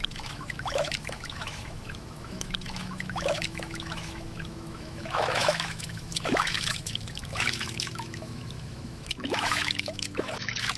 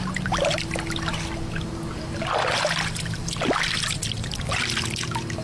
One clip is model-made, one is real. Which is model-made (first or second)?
first